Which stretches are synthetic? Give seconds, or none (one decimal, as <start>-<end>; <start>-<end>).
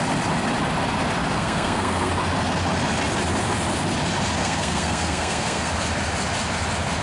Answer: 1.4-2.1; 4.4-5.7